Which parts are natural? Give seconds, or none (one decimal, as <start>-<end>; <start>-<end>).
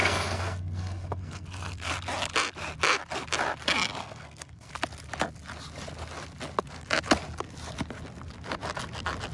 1.9-4.0; 4.7-9.3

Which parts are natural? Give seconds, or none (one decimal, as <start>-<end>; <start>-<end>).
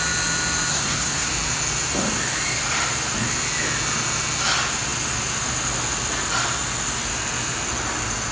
0.0-0.7; 1.3-8.3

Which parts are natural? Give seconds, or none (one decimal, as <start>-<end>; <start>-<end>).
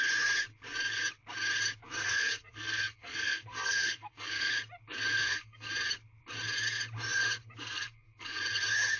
0.0-2.0; 4.5-5.2; 5.7-7.4; 8.4-9.0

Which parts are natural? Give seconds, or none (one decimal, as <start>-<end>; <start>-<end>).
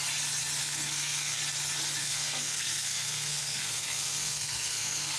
0.0-0.6; 1.4-2.0